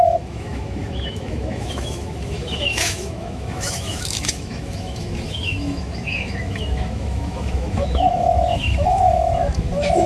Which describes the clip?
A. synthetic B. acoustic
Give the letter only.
A